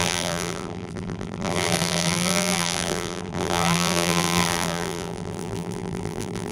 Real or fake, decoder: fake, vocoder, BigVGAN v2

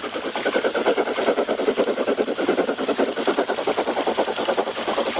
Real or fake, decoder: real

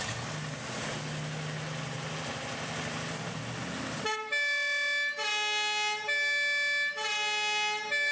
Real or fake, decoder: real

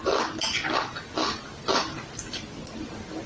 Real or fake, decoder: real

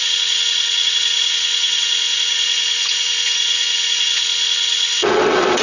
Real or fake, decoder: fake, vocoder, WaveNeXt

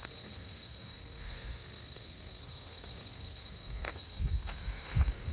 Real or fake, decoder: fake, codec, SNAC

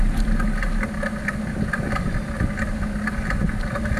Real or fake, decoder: real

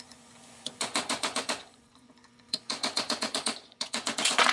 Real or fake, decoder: fake, vocoder, Vocos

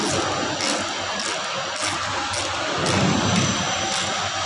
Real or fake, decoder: real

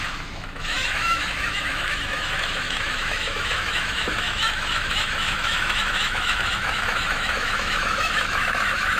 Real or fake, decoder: fake, autoencoder, DAC-VAE